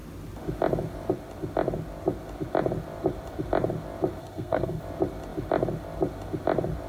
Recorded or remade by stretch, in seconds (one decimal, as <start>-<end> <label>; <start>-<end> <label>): 0.0-4.2 recorded; 4.2-4.8 remade; 4.8-6.9 recorded